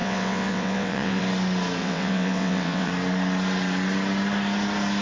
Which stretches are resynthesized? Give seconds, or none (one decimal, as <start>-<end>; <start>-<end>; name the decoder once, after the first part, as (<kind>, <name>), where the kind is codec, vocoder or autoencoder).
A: 0.0-1.2 (vocoder, WaveNeXt); 1.8-2.9

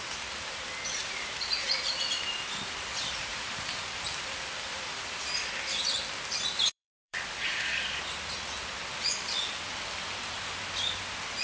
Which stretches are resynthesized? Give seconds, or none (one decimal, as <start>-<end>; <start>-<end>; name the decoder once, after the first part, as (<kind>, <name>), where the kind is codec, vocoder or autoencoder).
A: 1.0-1.9 (vocoder, BigVGAN v2); 3.3-5.4; 6.7-8.0

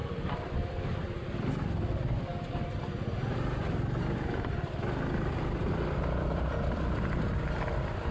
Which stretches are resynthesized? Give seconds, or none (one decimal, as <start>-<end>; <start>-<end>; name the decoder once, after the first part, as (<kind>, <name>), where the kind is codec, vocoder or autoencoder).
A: 0.0-8.1 (vocoder, BigVGAN v2)

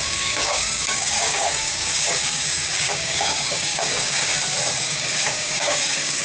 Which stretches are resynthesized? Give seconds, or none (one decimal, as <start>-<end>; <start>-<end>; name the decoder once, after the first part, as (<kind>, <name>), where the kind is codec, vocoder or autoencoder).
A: 0.0-4.3 (codec, DAC); 4.8-6.2

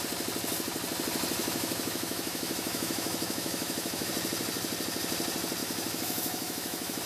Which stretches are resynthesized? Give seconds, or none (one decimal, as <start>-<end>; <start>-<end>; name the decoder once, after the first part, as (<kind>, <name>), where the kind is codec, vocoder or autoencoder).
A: 1.4-4.1 (autoencoder, DAC-VAE); 5.6-7.1

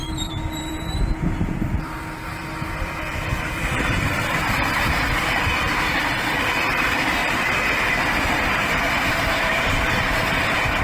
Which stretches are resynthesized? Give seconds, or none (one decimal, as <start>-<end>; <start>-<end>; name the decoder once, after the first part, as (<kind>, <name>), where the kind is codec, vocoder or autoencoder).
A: 0.0-10.8 (vocoder, BigVGAN v2)

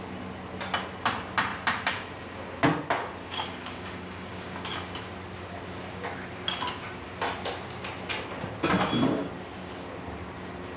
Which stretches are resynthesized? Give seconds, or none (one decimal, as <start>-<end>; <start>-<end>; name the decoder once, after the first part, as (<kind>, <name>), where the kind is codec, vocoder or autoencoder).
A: 3.2-5.0 (codec, DAC)